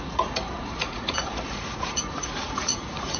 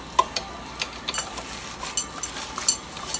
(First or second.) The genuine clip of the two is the second